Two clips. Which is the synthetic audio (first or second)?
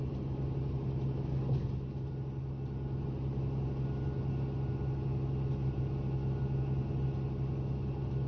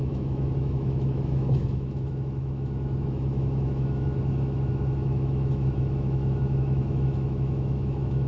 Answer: second